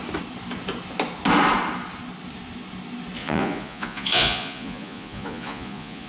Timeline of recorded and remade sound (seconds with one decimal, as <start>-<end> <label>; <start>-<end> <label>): 0.0-3.2 recorded; 3.2-6.1 remade